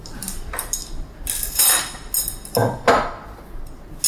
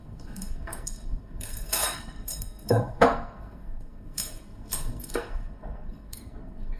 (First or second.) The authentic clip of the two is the first